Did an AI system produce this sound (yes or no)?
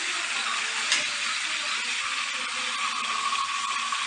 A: no